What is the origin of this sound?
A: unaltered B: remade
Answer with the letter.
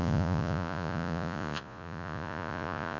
B